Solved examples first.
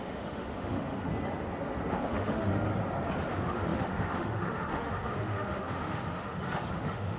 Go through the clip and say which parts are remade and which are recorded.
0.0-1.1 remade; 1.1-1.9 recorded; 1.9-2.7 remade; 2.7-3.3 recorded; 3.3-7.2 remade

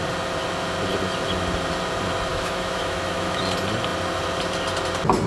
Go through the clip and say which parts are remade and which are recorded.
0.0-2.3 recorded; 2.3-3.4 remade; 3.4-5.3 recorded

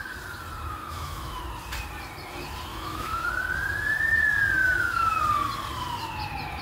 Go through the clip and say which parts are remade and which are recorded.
0.0-0.8 recorded; 0.8-1.4 remade; 1.4-2.7 recorded; 2.7-3.3 remade; 3.3-4.6 recorded; 4.6-5.2 remade; 5.2-6.6 recorded

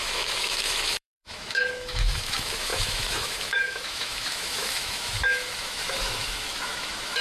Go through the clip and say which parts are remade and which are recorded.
0.0-7.2 remade